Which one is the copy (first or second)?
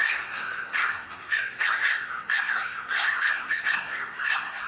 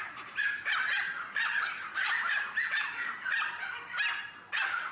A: first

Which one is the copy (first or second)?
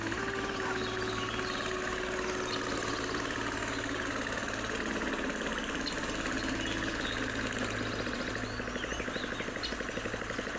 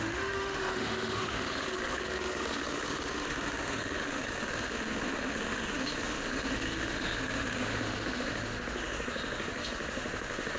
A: second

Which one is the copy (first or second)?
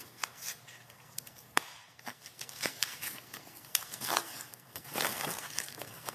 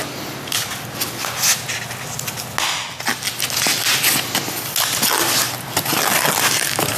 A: first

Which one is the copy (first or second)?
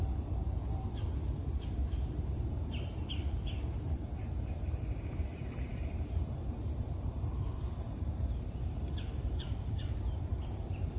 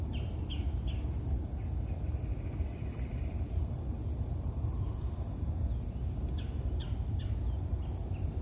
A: first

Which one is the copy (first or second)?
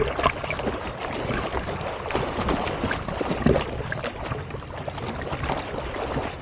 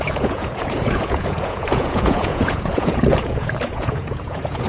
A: second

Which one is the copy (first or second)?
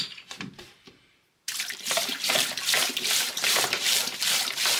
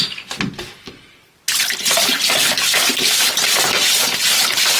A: first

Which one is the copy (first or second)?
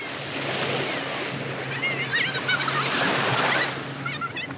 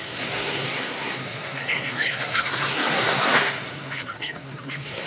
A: second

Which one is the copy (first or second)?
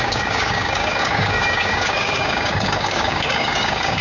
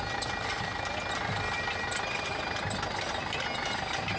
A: first